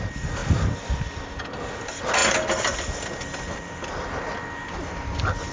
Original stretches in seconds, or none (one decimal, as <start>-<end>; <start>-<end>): 0.0-5.5

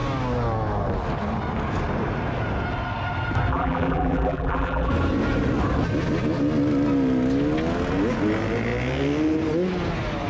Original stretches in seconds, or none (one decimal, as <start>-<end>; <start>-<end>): 0.0-3.5; 4.9-10.3

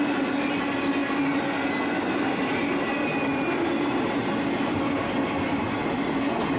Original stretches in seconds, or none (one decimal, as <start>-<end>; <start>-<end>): 0.0-6.6